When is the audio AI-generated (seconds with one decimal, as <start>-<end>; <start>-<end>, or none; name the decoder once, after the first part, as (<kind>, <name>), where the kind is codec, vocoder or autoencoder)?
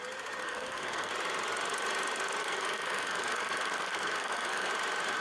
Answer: 0.4-1.1 (codec, SNAC); 2.4-4.7